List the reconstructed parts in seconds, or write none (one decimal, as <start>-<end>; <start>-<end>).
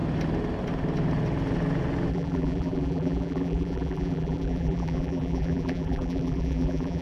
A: 2.1-7.0